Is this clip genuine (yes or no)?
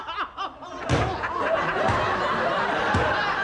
yes